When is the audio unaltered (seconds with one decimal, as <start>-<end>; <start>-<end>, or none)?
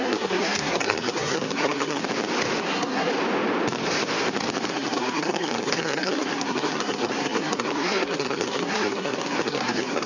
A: 2.0-2.6; 3.1-4.7